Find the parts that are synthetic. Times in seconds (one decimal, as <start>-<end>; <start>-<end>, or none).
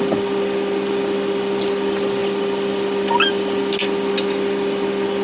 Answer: none